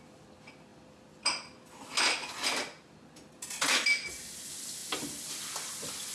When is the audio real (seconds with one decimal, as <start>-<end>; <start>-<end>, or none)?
0.0-6.1